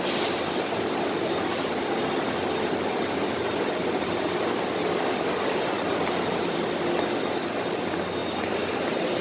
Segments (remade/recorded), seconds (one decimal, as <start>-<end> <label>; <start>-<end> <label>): 0.0-2.9 recorded; 2.9-6.4 remade; 6.4-8.2 recorded; 8.2-9.2 remade